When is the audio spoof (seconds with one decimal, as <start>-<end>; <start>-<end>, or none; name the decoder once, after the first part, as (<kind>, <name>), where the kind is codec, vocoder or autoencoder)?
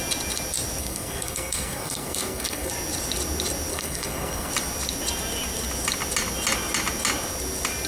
0.8-2.7 (codec, SNAC); 3.7-4.5